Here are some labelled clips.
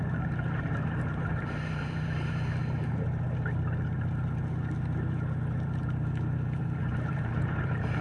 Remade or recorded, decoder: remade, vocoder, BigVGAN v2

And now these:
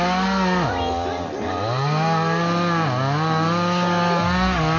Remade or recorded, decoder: recorded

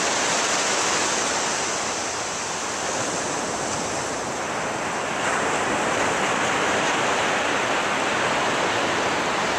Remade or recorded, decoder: recorded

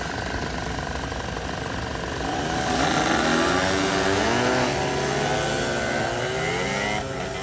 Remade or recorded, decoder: recorded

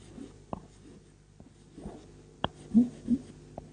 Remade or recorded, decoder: recorded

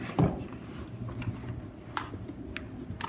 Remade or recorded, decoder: recorded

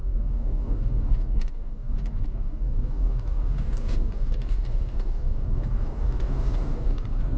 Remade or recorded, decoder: remade, codec, DAC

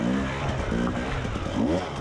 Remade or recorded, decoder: recorded